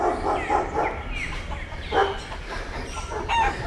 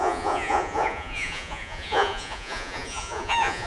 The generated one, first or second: second